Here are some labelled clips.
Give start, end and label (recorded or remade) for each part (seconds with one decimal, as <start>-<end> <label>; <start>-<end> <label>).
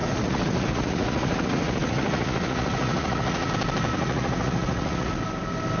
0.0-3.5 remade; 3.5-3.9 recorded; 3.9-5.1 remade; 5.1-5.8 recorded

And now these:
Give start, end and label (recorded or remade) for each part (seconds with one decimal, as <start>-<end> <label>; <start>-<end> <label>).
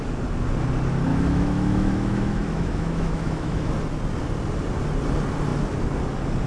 0.0-1.1 recorded; 1.1-3.7 remade; 3.7-6.5 recorded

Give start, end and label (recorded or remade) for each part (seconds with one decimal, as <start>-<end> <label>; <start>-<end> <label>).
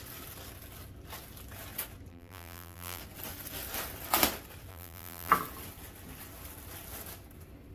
0.0-2.1 recorded; 2.1-3.0 remade; 3.0-4.7 recorded; 4.7-5.3 remade; 5.3-7.7 recorded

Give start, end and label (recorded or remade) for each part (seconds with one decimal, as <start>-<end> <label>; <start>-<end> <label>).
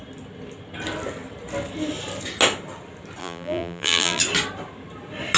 0.0-3.2 recorded; 3.2-4.2 remade; 4.2-5.4 recorded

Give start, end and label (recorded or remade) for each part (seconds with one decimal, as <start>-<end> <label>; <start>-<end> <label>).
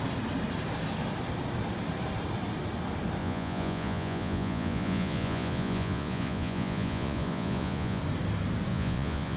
0.0-3.2 recorded; 3.2-8.0 remade; 8.0-8.7 recorded; 8.7-9.4 remade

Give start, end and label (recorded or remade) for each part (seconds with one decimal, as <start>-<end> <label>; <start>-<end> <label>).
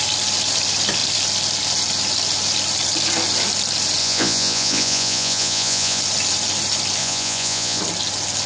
0.0-4.0 recorded; 4.0-6.0 remade; 6.0-7.0 recorded; 7.0-7.8 remade; 7.8-8.5 recorded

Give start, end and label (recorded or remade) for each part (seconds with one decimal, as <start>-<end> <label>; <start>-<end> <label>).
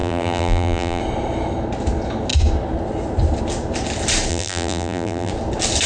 0.0-1.0 remade; 1.0-4.3 recorded; 4.3-5.3 remade; 5.3-5.9 recorded